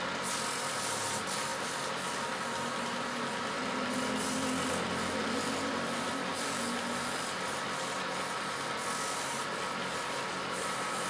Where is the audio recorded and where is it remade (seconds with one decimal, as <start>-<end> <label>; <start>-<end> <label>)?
0.0-11.1 recorded